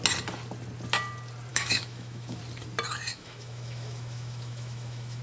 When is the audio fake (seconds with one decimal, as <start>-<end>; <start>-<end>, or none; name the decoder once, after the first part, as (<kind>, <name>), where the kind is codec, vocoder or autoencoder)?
1.5-2.4 (autoencoder, DAC-VAE); 3.1-5.2